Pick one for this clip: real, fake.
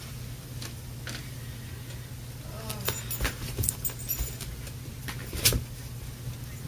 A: real